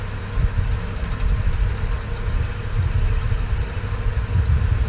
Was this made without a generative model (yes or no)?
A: yes